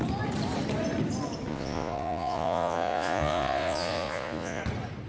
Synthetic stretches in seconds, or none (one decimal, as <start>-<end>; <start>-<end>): 1.5-4.6